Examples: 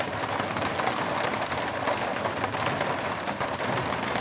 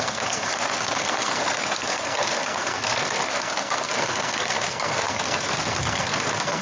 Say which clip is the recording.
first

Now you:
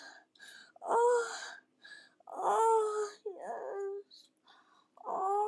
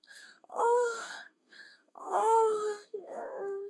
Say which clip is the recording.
first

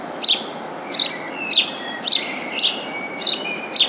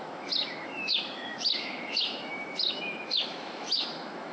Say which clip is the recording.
first